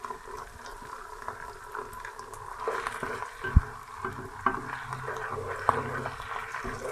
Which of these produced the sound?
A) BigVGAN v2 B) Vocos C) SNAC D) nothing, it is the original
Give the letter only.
D